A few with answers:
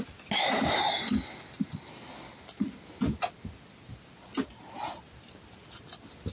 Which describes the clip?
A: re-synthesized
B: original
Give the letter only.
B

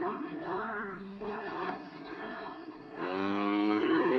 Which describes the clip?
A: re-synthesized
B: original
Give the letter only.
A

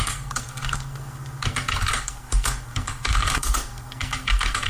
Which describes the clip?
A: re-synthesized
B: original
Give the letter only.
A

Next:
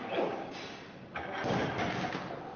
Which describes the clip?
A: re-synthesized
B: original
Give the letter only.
B